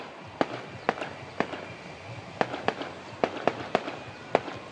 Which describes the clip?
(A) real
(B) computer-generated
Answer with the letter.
A